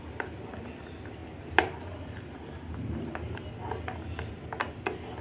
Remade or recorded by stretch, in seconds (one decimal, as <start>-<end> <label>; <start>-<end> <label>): 0.0-5.2 recorded